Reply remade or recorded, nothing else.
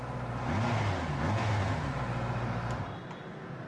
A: recorded